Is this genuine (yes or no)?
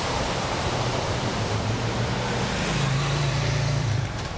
no